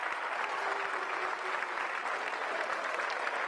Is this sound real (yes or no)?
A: yes